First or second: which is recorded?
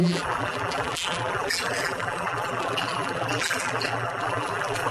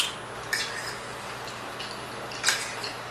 second